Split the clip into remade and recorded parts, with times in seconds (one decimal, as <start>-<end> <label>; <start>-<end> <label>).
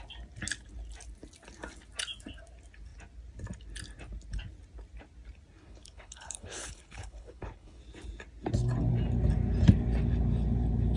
0.0-5.6 recorded; 5.6-7.8 remade; 7.8-11.0 recorded